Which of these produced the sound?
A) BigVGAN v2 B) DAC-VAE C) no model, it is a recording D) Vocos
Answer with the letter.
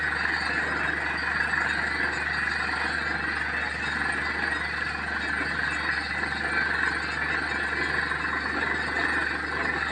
C